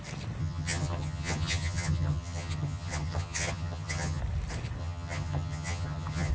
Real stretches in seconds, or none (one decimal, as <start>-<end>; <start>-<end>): 0.0-0.4; 4.2-4.8